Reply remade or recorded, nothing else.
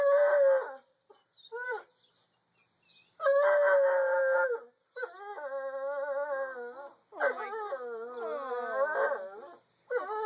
recorded